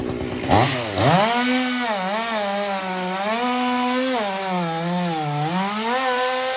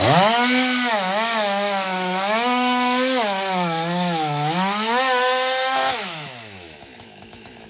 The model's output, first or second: second